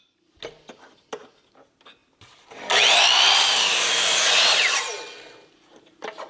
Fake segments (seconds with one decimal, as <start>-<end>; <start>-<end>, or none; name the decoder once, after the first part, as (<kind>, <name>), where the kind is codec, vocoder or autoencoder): none